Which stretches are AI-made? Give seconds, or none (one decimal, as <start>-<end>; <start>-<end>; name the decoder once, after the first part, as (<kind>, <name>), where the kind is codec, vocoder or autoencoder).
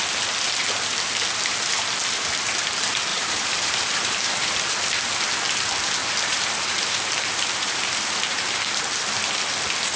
3.1-4.6 (vocoder, BigVGAN v2); 6.0-8.8